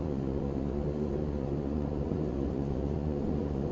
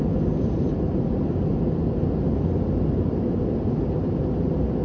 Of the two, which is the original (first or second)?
second